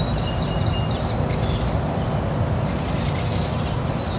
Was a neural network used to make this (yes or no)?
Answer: no